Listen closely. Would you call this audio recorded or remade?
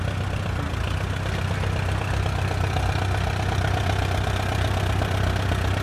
recorded